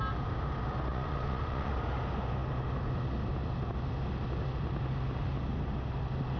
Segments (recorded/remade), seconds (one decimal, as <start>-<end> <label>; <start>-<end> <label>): 0.0-0.9 recorded; 0.9-1.7 remade; 1.7-6.4 recorded